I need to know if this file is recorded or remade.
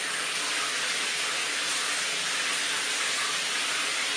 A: recorded